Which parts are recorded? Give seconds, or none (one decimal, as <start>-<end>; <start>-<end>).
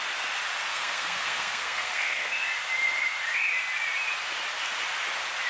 0.0-0.7; 2.4-5.5